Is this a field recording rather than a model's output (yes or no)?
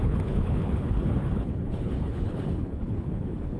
no